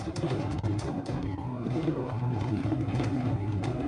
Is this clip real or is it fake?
fake